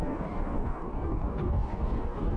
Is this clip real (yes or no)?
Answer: no